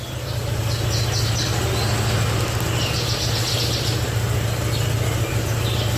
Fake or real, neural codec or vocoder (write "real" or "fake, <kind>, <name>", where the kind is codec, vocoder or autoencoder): real